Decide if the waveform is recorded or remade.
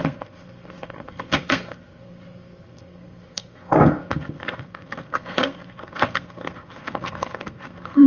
remade